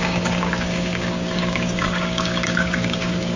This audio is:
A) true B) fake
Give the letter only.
B